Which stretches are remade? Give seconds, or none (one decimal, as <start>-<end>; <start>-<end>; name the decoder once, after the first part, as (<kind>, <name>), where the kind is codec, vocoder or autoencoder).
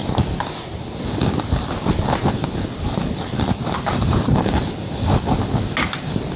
none